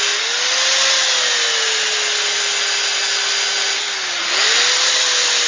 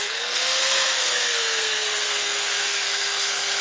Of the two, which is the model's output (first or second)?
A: second